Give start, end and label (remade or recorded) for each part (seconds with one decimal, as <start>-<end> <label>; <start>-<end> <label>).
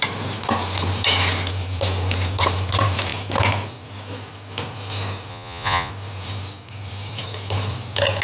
0.0-5.3 recorded; 5.3-5.9 remade; 5.9-8.2 recorded